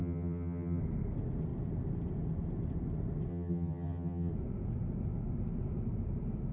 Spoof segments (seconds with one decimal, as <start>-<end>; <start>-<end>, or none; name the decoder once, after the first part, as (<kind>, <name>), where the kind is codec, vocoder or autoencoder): 0.0-0.8 (vocoder, HiFi-GAN); 3.3-4.3